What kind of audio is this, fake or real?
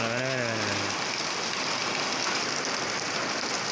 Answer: real